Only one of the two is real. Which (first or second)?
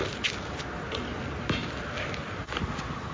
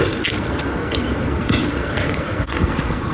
first